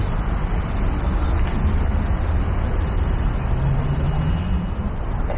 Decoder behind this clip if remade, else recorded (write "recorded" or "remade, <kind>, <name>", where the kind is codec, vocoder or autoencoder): recorded